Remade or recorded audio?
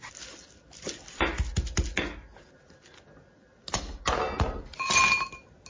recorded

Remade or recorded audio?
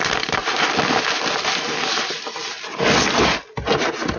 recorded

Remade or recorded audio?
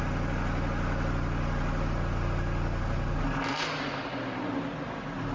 recorded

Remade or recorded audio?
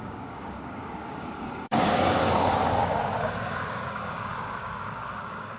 remade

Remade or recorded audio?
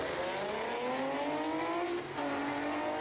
recorded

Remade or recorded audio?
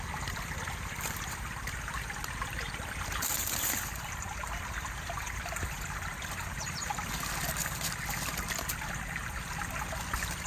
recorded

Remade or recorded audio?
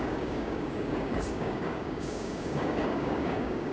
remade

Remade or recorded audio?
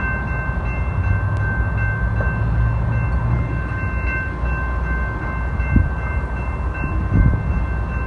recorded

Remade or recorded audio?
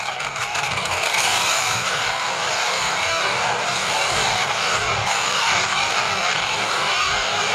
remade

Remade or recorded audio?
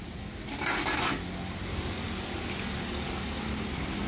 recorded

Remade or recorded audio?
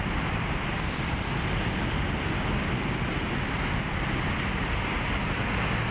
recorded